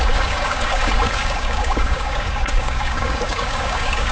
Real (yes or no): no